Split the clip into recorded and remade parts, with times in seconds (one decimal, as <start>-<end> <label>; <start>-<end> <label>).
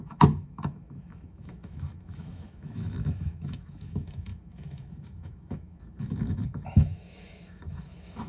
0.0-8.3 remade